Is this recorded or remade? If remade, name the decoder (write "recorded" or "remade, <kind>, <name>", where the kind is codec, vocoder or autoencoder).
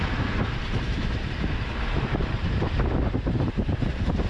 remade, vocoder, BigVGAN v2